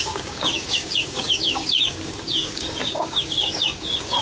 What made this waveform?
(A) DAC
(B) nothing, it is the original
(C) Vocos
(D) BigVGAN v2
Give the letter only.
A